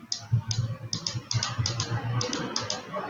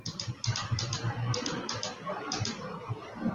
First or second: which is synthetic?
second